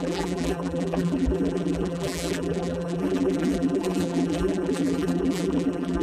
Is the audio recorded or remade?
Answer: remade